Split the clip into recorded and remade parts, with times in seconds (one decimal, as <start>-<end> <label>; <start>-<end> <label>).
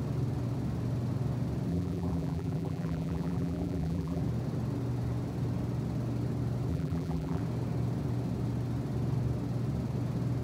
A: 0.0-1.7 recorded; 1.7-4.2 remade; 4.2-6.7 recorded; 6.7-7.4 remade; 7.4-10.4 recorded